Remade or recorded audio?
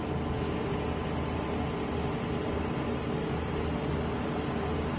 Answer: recorded